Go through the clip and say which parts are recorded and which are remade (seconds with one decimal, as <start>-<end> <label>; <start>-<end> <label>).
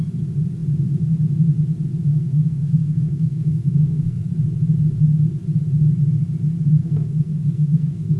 0.0-2.1 recorded; 2.1-4.3 remade; 4.3-6.8 recorded; 6.8-8.2 remade